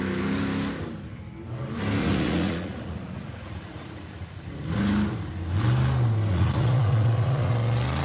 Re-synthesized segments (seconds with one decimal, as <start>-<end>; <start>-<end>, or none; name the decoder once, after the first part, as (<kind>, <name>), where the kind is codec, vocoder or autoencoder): 2.0-4.4 (vocoder, Vocos); 6.3-7.5